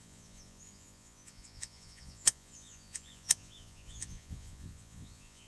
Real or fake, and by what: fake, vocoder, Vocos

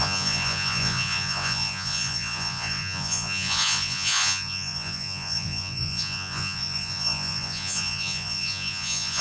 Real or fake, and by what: fake, vocoder, Vocos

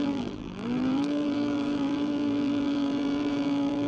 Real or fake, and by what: fake, vocoder, BigVGAN v2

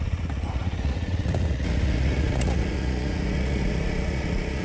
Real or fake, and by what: fake, vocoder, Vocos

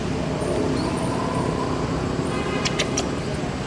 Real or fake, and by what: real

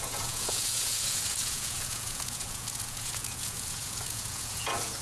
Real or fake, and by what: fake, vocoder, Vocos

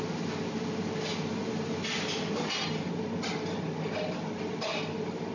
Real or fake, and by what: real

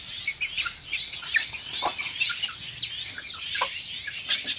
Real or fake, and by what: real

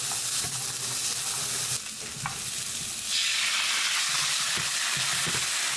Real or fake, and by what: real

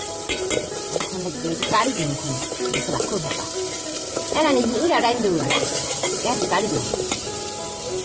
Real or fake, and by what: fake, vocoder, BigVGAN v2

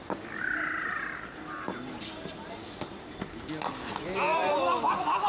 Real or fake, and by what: real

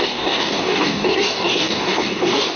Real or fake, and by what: fake, codec, DAC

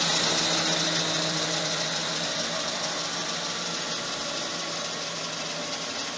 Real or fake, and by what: real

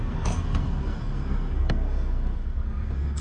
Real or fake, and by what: fake, codec, SNAC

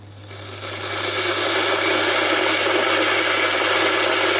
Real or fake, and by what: real